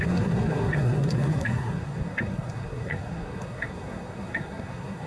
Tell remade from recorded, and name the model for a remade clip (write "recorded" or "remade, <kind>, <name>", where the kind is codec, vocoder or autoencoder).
remade, codec, SNAC